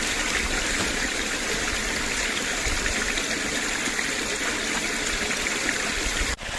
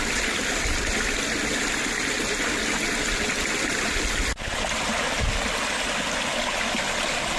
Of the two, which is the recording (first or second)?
second